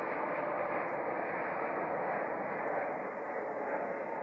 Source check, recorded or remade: recorded